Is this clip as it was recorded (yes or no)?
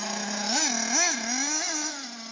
yes